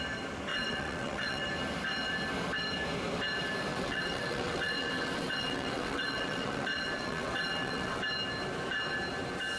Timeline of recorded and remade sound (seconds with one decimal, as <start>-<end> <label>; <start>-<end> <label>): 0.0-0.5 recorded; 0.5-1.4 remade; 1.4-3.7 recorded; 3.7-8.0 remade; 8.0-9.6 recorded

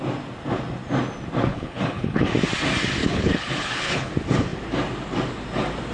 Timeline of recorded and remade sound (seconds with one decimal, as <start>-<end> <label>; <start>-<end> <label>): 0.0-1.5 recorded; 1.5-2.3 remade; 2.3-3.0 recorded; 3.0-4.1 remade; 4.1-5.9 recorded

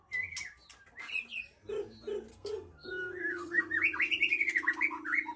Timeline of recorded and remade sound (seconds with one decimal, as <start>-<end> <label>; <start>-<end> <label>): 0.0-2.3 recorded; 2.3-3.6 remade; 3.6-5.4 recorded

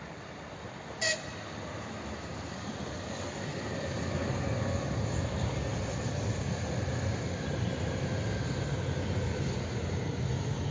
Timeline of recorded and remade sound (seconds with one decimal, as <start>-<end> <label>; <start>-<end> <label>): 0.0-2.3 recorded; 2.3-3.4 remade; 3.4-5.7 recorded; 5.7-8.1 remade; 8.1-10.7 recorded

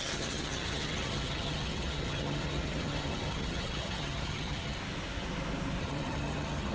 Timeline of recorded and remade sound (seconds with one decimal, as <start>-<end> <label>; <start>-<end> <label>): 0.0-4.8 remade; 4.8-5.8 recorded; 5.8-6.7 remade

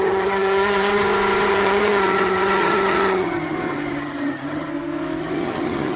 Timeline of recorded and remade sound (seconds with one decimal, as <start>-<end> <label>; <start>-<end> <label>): 0.0-0.9 remade; 0.9-1.5 recorded; 1.5-4.7 remade; 4.7-5.2 recorded; 5.2-6.0 remade